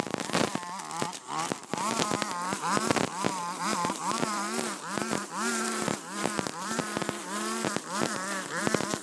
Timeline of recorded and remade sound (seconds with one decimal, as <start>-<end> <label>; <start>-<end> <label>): 0.0-3.4 recorded; 3.4-8.6 remade; 8.6-9.0 recorded